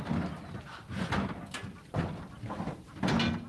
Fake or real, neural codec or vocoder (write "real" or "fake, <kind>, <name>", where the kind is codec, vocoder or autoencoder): real